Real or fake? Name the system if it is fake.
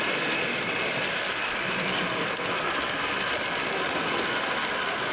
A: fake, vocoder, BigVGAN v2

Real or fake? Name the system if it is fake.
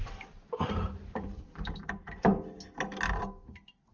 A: real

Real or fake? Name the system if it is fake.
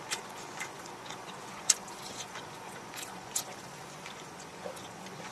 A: fake, vocoder, Vocos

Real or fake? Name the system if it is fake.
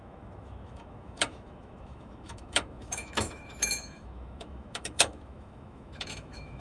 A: fake, autoencoder, DAC-VAE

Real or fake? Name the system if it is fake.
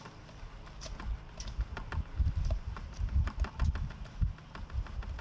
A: real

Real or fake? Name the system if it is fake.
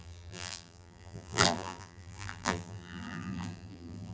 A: fake, vocoder, BigVGAN v2